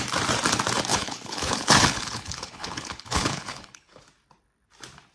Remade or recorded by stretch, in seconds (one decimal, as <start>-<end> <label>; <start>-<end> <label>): 0.0-0.9 recorded; 0.9-4.0 remade; 4.0-5.1 recorded